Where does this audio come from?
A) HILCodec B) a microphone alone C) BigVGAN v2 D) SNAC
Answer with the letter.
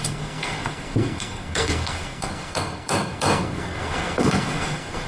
D